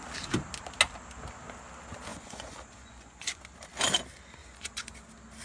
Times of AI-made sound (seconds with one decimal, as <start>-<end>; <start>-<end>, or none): 2.1-3.4; 4.4-5.0